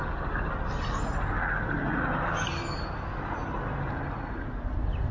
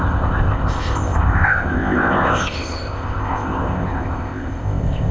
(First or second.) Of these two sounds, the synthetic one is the second